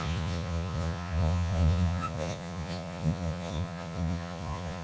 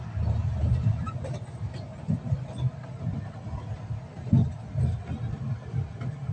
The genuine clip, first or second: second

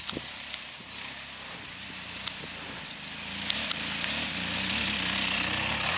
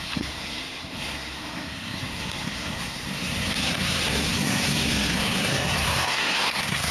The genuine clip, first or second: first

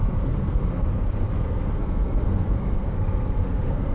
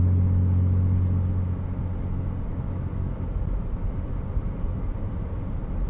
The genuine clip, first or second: second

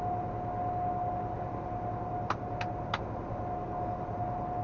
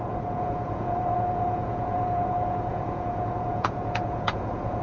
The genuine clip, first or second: first